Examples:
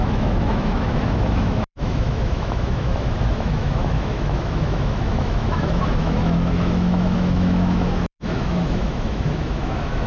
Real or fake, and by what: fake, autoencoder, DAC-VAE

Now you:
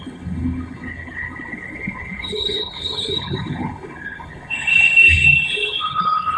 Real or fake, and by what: fake, codec, HILCodec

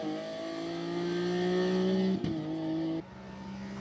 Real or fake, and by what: real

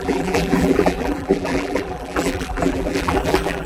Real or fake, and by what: fake, vocoder, BigVGAN v2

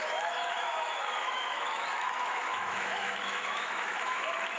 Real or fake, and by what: fake, autoencoder, DAC-VAE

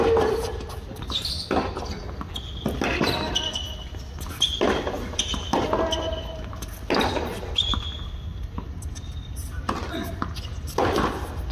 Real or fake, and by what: real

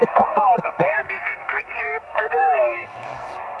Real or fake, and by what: fake, codec, SNAC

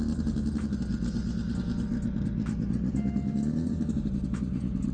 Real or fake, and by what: real